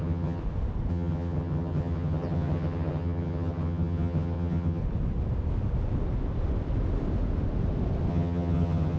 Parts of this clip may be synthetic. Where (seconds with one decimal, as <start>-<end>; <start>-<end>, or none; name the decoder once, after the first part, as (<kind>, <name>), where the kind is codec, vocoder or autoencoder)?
0.0-0.4 (vocoder, HiFi-GAN); 0.9-4.8; 8.1-9.0